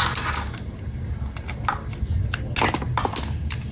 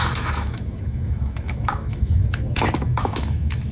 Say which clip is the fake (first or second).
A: second